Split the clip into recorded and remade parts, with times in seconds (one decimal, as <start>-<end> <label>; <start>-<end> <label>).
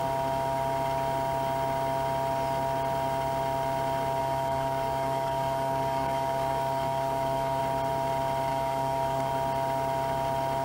0.0-4.2 recorded; 4.2-7.6 remade; 7.6-8.5 recorded; 8.5-9.3 remade; 9.3-10.6 recorded